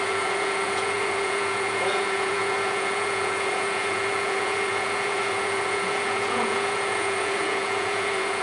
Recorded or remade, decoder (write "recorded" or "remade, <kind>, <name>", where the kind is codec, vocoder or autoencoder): remade, vocoder, Vocos